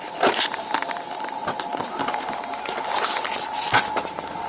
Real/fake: real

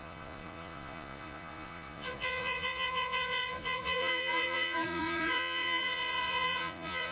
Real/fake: fake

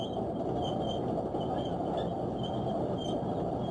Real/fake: real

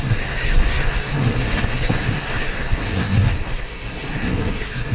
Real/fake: fake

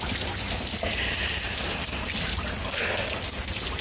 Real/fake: real